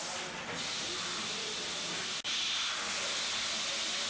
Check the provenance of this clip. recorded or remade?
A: recorded